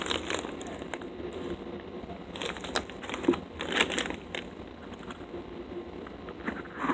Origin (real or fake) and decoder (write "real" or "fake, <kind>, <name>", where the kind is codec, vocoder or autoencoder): real